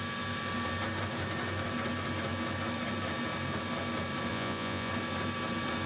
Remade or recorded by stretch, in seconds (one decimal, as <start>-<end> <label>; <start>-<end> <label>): 0.0-4.3 recorded; 4.3-4.9 remade; 4.9-5.9 recorded